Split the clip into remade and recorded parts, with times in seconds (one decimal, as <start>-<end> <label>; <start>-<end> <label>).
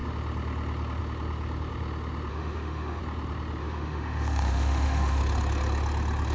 0.0-2.3 recorded; 2.3-3.0 remade; 3.0-3.6 recorded; 3.6-5.2 remade; 5.2-6.3 recorded